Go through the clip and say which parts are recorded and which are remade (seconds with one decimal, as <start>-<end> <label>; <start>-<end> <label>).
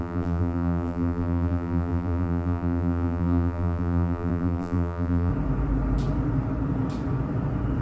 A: 0.0-5.3 remade; 5.3-7.8 recorded